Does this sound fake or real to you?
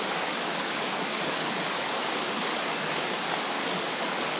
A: fake